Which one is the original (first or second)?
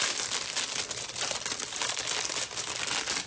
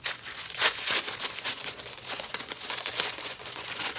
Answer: first